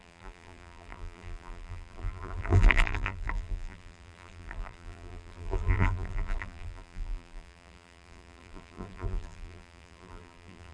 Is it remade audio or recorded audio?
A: remade